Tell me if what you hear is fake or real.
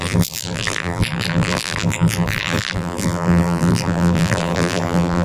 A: fake